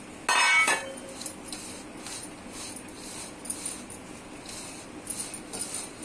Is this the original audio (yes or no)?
yes